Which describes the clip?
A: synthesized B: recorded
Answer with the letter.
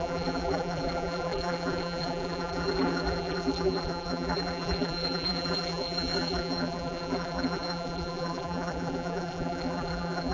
A